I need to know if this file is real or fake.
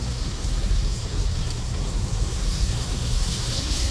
fake